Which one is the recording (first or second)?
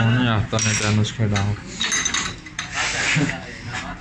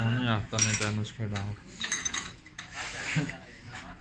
first